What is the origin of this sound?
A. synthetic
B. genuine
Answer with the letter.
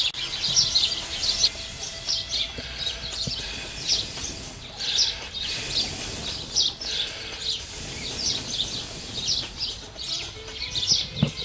B